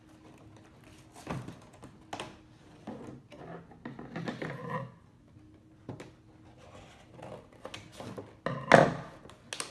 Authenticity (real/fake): real